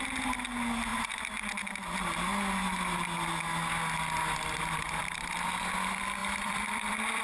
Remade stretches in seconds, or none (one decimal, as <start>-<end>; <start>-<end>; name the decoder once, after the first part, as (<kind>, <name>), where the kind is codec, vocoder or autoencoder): 6.2-7.2 (vocoder, BigVGAN v2)